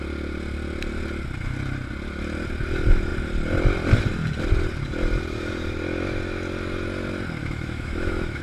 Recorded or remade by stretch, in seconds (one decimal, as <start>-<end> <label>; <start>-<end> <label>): 0.0-7.4 recorded; 7.4-8.4 remade